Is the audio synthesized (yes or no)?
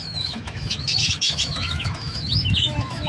yes